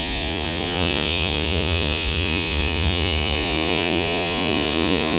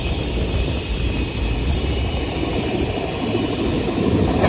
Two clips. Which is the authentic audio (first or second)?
second